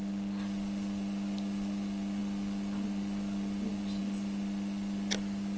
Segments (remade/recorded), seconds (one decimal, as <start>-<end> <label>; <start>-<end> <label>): 0.0-5.6 recorded